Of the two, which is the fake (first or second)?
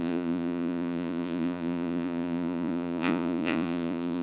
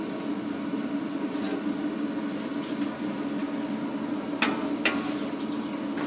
first